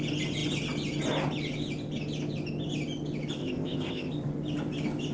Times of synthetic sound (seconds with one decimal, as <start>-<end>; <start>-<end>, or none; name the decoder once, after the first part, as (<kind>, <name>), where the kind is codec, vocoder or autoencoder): 3.4-4.1 (codec, ZipCodec)